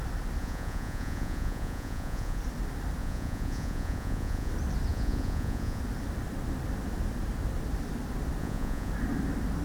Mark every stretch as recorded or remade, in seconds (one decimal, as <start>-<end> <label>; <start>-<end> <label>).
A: 0.0-0.4 recorded; 0.4-2.4 remade; 2.4-3.0 recorded; 3.0-4.5 remade; 4.5-4.9 recorded; 4.9-5.8 remade; 5.8-8.4 recorded; 8.4-8.9 remade; 8.9-9.6 recorded